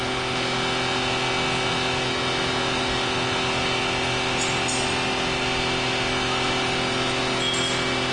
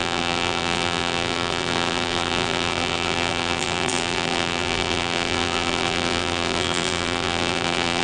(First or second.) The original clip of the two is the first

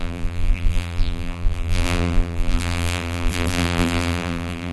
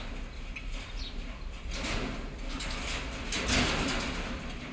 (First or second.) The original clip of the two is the second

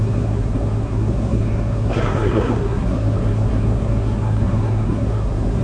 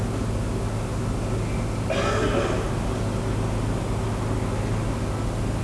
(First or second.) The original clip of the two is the second